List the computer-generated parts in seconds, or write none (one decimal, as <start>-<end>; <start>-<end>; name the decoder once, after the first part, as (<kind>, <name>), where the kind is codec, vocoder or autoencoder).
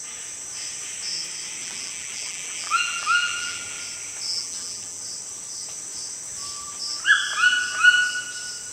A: 1.6-3.8 (vocoder, BigVGAN v2); 4.3-5.0